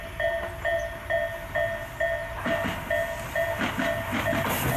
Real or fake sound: real